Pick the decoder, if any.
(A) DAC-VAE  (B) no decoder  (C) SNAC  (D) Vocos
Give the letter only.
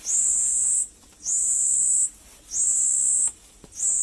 B